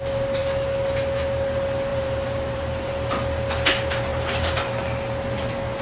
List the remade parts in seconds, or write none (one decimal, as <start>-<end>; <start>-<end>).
1.9-2.9; 4.1-4.7